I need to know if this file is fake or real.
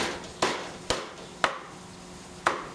real